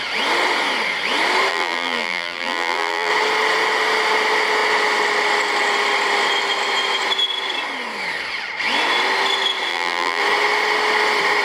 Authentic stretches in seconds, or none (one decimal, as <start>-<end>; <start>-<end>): 0.0-1.5; 3.1-9.7; 10.2-11.4